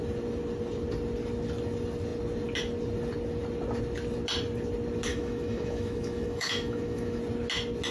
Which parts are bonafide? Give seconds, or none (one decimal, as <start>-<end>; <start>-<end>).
0.0-5.1; 7.2-7.9